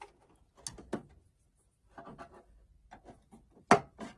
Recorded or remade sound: recorded